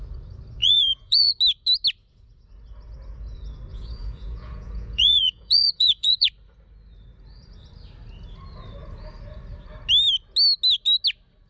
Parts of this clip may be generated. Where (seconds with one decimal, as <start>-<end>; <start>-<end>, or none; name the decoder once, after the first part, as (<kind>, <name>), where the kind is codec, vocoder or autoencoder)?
0.6-1.4 (vocoder, Vocos); 3.7-6.3